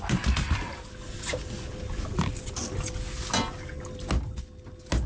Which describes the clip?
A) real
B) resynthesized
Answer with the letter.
A